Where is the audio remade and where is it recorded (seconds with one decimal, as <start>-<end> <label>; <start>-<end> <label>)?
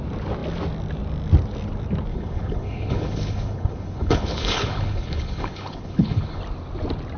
0.0-2.1 recorded; 2.1-6.4 remade; 6.4-7.2 recorded